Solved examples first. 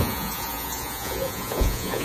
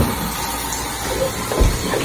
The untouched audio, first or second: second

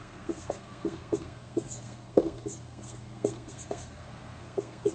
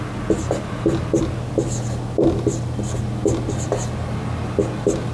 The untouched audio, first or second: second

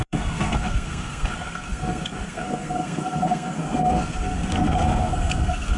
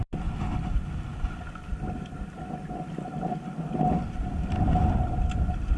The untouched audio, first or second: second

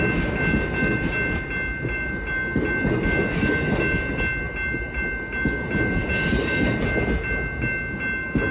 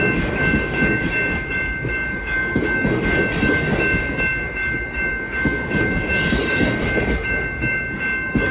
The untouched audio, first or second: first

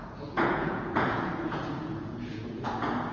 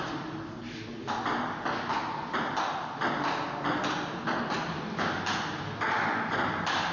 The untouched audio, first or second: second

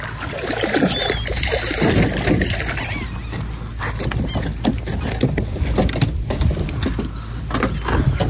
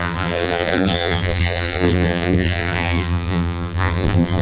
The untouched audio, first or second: first